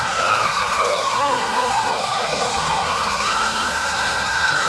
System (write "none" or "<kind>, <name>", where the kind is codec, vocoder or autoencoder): codec, SNAC